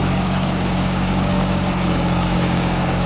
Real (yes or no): no